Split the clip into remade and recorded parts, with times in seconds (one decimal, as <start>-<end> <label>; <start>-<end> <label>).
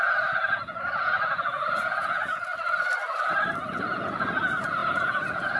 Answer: 0.0-2.5 remade; 2.5-3.7 recorded; 3.7-5.6 remade